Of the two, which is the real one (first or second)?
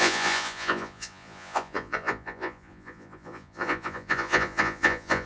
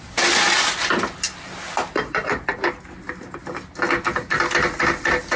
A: second